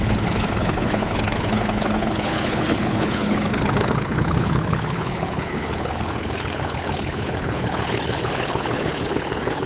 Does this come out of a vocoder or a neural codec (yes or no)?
yes